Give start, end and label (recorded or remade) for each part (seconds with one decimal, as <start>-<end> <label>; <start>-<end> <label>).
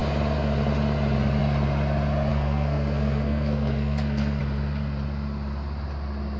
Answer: 0.0-2.3 recorded; 2.3-4.4 remade; 4.4-6.4 recorded